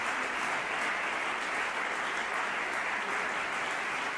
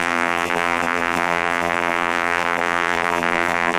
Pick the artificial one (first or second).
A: second